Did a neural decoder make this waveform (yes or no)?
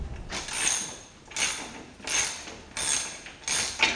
no